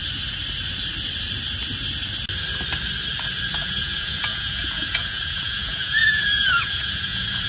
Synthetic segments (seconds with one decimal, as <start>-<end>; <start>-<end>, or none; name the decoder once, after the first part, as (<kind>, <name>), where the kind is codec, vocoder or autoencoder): 3.5-7.5 (vocoder, Vocos)